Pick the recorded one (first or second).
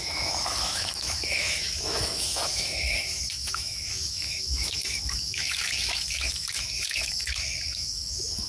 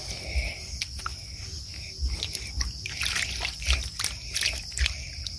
second